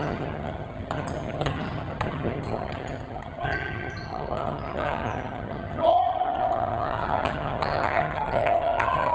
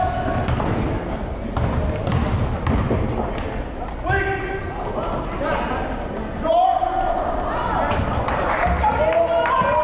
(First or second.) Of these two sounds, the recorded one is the second